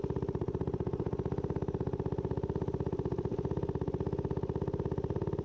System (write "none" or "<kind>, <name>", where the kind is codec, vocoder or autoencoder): none